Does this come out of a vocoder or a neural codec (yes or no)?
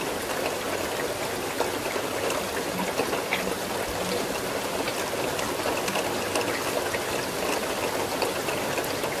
no